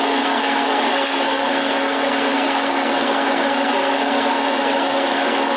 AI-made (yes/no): yes